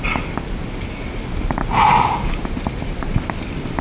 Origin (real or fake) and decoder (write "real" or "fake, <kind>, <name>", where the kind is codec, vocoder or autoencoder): real